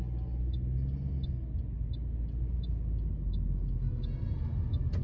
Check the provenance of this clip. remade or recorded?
recorded